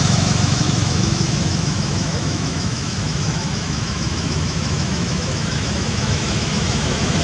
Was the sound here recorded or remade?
remade